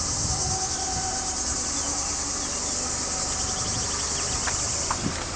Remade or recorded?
recorded